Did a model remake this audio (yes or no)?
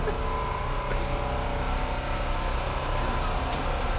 no